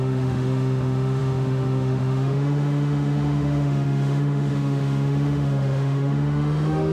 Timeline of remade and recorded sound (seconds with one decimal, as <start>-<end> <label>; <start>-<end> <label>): 0.0-6.9 remade